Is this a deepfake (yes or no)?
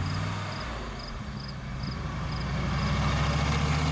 no